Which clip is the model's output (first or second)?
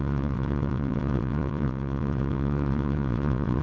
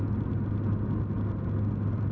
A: first